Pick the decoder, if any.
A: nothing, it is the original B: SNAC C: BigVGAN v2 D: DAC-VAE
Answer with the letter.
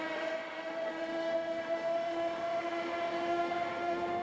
D